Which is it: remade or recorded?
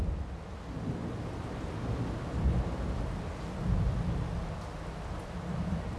recorded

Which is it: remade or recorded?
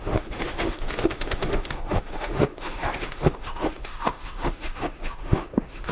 remade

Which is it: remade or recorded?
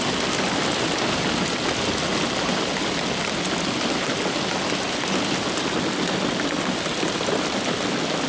recorded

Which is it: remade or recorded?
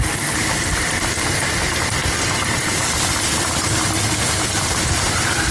recorded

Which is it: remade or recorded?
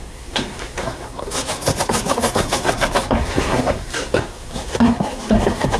remade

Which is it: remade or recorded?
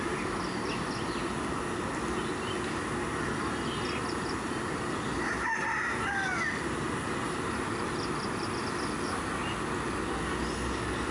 recorded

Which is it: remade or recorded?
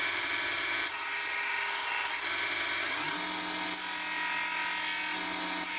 recorded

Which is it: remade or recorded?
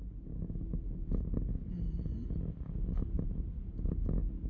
recorded